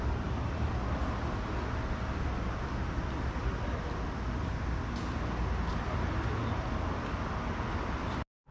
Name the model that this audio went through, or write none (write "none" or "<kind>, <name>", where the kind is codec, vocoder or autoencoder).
none